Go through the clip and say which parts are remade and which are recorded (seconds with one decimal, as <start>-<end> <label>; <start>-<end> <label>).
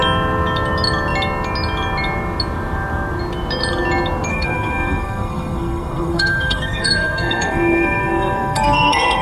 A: 0.0-4.3 recorded; 4.3-9.2 remade